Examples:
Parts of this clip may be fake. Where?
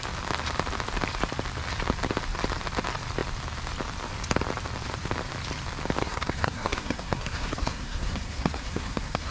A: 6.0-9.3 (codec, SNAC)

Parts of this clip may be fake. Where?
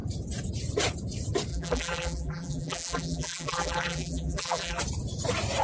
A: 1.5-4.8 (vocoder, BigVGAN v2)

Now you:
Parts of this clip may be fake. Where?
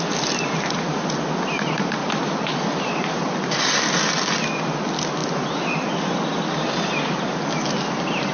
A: none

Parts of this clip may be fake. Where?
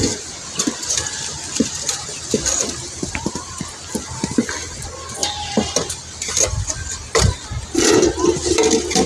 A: 0.6-3.5 (vocoder, BigVGAN v2); 5.2-8.7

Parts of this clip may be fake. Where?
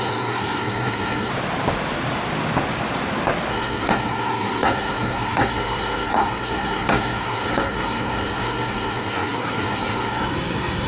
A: 0.0-1.3 (codec, SNAC); 3.5-10.9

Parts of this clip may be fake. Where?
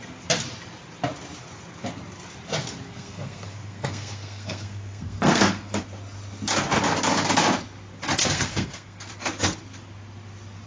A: 2.9-5.8 (codec, SNAC); 8.2-9.1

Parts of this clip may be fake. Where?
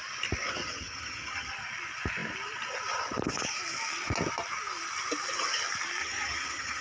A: 0.6-1.5 (vocoder, HiFi-GAN); 6.0-6.8